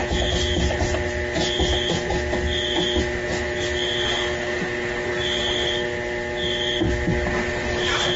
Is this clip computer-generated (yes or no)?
no